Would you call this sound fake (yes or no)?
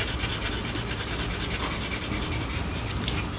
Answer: no